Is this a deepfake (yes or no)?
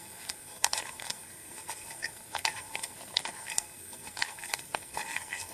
yes